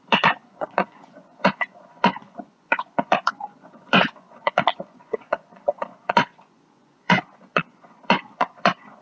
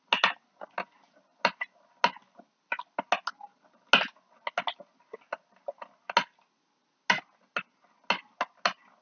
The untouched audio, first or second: second